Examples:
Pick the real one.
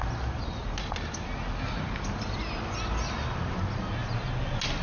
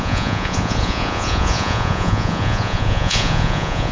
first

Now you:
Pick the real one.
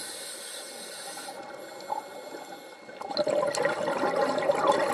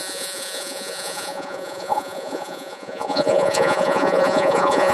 first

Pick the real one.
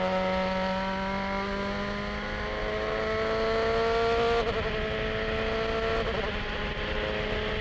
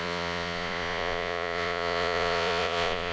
first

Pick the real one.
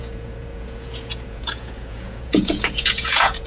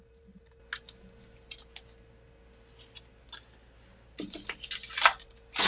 second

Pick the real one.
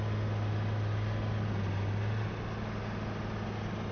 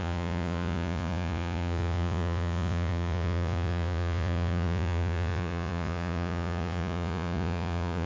first